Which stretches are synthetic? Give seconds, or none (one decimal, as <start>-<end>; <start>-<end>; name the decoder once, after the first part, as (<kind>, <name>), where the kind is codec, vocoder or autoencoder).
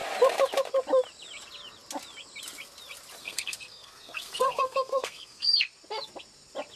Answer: 3.2-5.7 (codec, SNAC)